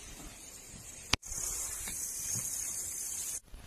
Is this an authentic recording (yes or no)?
no